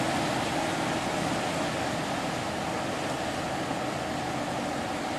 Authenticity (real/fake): real